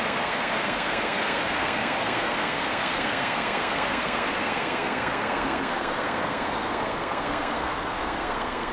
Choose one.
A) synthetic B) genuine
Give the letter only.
A